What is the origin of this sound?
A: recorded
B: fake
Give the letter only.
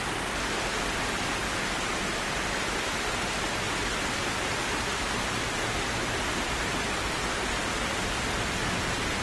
A